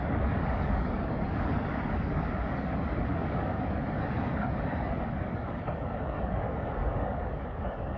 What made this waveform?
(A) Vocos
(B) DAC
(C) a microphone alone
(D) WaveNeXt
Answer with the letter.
B